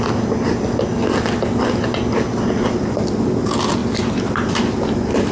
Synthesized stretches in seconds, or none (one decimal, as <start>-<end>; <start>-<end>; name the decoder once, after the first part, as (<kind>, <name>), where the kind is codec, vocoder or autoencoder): none